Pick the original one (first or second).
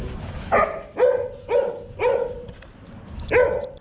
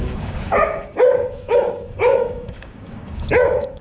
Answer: first